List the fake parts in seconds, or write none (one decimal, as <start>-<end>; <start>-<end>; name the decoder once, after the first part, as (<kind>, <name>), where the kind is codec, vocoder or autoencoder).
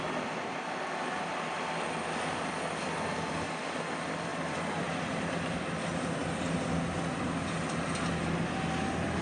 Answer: none